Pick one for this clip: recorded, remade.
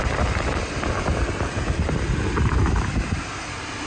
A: recorded